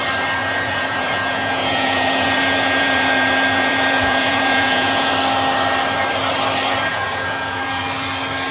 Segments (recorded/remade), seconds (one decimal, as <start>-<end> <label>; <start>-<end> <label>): 0.0-0.4 recorded; 0.4-5.1 remade; 5.1-6.9 recorded; 6.9-7.8 remade; 7.8-8.5 recorded